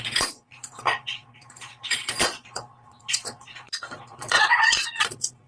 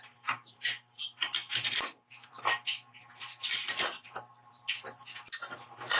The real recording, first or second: second